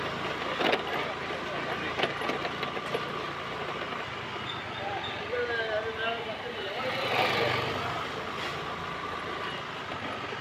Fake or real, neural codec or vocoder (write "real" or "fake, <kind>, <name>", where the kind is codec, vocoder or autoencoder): real